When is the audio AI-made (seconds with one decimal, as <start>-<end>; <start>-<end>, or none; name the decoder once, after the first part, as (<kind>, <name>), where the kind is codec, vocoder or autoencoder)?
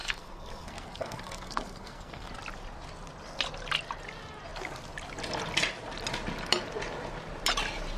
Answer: 0.0-2.3 (codec, SNAC)